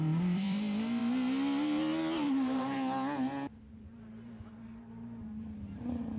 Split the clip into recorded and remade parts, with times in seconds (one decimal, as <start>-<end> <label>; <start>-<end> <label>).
0.0-1.0 remade; 1.0-4.6 recorded; 4.6-6.2 remade